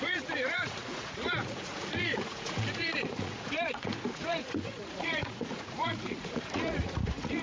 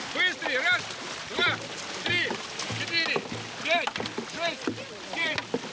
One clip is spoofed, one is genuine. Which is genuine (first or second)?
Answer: second